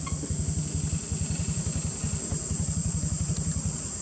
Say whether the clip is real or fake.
real